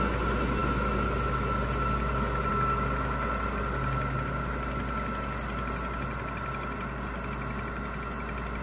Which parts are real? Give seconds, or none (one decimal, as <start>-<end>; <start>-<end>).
0.0-8.6